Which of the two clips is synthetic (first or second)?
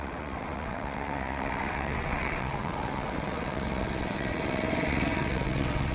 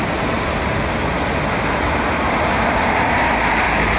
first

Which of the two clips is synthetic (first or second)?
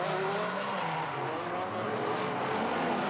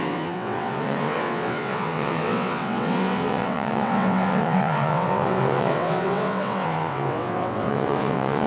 second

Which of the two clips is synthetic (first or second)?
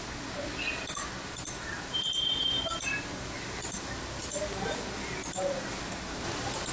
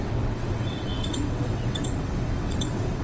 second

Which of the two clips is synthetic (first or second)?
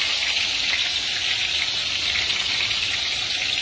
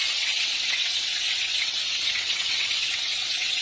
second